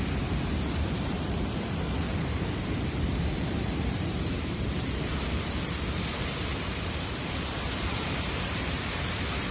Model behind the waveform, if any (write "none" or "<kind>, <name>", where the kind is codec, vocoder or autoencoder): vocoder, BigVGAN v2